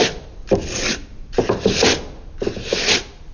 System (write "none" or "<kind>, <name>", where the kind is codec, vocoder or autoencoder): none